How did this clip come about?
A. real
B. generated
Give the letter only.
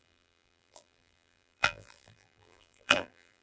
B